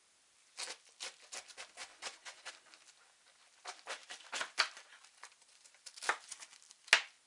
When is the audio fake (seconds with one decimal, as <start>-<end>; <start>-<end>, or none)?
1.9-2.5